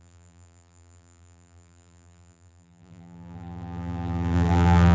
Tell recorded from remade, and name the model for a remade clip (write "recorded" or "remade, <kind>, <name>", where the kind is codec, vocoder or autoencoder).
remade, vocoder, BigVGAN v2